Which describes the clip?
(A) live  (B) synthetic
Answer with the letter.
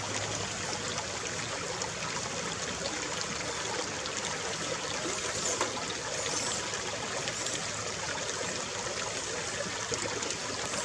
A